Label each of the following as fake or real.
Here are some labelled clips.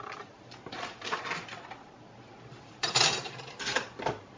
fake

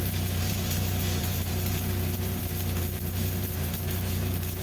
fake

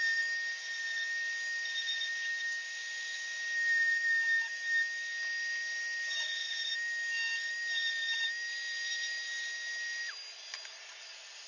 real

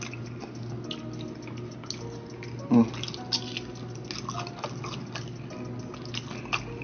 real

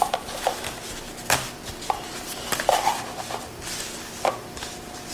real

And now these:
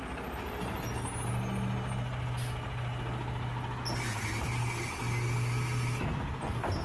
real